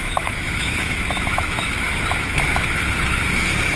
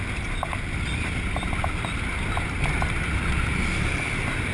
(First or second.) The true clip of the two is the second